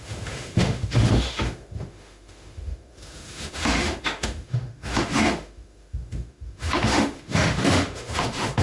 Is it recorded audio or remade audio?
remade